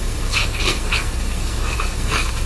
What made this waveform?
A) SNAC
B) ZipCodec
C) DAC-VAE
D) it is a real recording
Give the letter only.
A